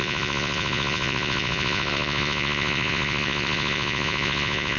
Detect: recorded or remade remade